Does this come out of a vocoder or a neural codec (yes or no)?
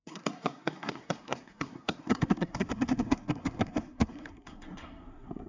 yes